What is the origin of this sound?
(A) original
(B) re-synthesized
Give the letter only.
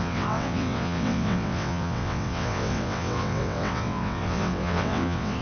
B